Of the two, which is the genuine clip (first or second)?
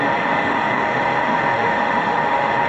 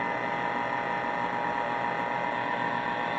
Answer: second